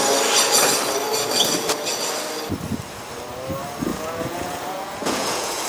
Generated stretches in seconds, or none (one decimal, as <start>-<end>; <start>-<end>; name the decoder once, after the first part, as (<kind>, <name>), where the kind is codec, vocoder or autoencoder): 3.9-5.7 (vocoder, Vocos)